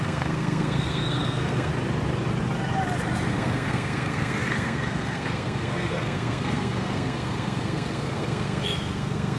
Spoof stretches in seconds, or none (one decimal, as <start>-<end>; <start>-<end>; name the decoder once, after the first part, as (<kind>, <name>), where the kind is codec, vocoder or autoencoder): 0.0-1.7 (codec, SNAC); 3.3-9.4